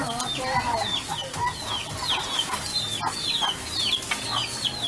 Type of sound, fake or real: real